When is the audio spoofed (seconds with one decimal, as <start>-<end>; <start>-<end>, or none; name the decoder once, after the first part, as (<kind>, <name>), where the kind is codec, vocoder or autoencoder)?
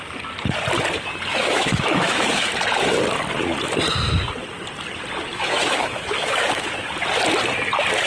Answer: 1.3-2.5 (autoencoder, DAC-VAE); 5.3-6.7